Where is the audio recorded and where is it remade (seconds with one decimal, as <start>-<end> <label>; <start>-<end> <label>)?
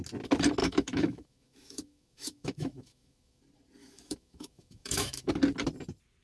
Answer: 0.0-0.6 recorded; 0.6-3.4 remade; 3.4-3.8 recorded; 3.8-5.3 remade; 5.3-6.2 recorded